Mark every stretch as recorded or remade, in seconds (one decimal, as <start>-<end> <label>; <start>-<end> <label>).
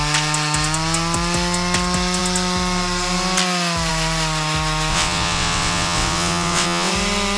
0.0-4.9 recorded; 4.9-6.9 remade; 6.9-7.4 recorded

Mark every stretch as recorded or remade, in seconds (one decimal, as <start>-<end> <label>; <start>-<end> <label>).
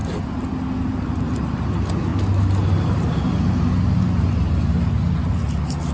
0.0-5.9 recorded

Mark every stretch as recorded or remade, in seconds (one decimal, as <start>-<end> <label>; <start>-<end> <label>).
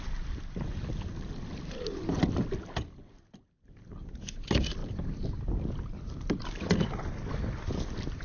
0.0-8.2 recorded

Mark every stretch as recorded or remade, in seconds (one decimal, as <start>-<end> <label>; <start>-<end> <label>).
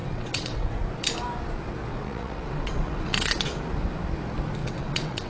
0.0-0.8 remade; 0.8-1.9 recorded; 1.9-3.6 remade; 3.6-4.6 recorded; 4.6-5.3 remade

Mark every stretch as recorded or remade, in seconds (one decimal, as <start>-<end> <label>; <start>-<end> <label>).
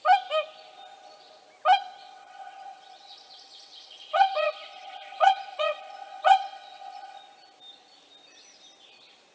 0.0-2.0 recorded; 2.0-7.2 remade; 7.2-9.3 recorded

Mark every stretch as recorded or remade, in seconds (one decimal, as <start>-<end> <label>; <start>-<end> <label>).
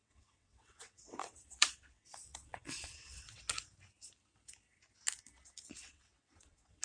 0.0-3.4 remade; 3.4-5.8 recorded; 5.8-6.8 remade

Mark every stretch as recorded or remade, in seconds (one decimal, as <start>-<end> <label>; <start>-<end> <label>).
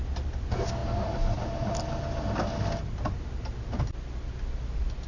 0.0-5.1 recorded